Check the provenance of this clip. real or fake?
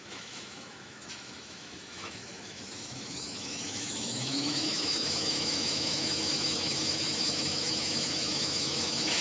fake